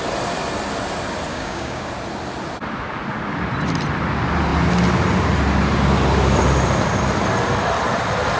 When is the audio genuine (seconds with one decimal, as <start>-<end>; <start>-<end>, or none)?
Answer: 0.0-1.3; 1.9-8.4